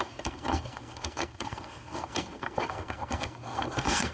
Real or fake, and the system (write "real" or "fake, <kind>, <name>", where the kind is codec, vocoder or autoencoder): fake, codec, SNAC